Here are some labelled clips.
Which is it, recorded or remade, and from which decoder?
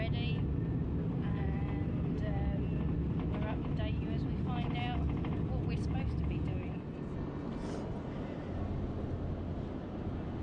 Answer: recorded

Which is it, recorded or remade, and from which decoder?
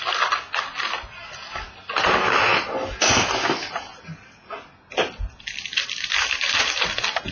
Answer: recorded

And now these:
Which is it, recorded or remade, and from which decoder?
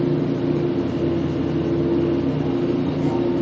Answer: recorded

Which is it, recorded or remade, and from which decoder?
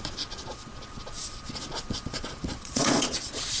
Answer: remade, vocoder, Vocos